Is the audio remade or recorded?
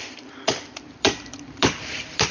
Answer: remade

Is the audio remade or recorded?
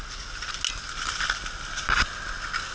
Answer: recorded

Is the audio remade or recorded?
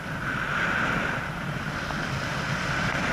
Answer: remade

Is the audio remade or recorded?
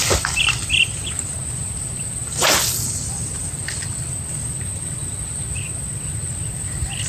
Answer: recorded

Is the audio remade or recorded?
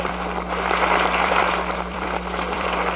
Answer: remade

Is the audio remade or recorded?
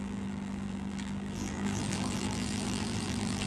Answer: remade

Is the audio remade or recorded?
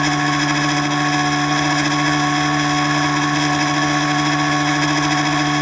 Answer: recorded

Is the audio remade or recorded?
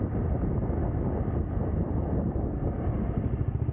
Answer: recorded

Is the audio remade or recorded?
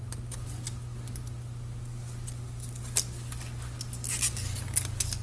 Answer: recorded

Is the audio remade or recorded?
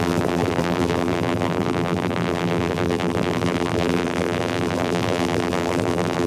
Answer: remade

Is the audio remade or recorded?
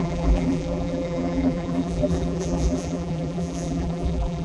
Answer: remade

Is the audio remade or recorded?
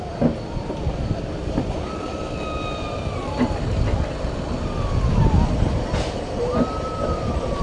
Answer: recorded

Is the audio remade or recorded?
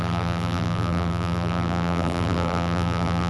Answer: remade